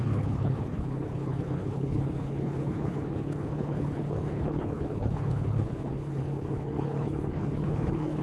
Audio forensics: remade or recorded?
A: remade